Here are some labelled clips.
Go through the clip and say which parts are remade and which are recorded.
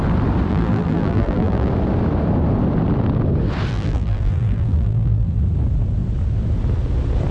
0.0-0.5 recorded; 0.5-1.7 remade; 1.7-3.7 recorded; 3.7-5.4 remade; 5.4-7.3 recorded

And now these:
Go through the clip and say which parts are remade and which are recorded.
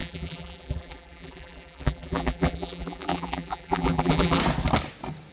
0.0-4.4 remade; 4.4-5.3 recorded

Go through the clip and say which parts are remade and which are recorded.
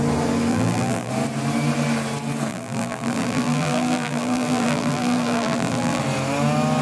0.0-0.5 recorded; 0.5-1.1 remade; 1.1-2.5 recorded; 2.5-6.0 remade; 6.0-6.8 recorded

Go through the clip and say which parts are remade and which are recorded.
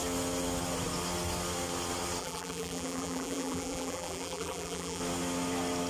0.0-2.2 recorded; 2.2-5.0 remade; 5.0-5.9 recorded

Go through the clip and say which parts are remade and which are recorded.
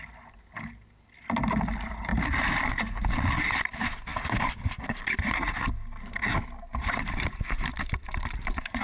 0.0-2.1 recorded; 2.1-3.1 remade; 3.1-4.1 recorded; 4.1-5.0 remade; 5.0-6.7 recorded; 6.7-8.8 remade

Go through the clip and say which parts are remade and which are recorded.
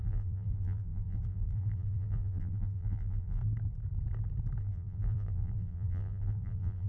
0.0-3.4 remade; 3.4-4.6 recorded; 4.6-6.9 remade